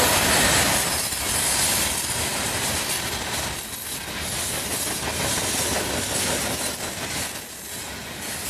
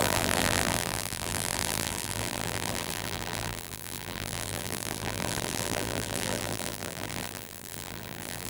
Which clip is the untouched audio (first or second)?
first